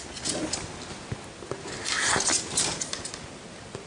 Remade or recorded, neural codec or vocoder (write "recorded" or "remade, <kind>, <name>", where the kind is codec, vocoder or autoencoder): recorded